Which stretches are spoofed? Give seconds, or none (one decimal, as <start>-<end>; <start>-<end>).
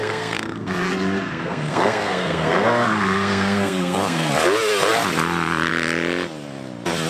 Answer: 0.0-4.3